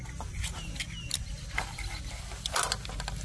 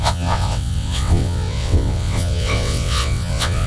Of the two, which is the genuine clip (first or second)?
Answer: first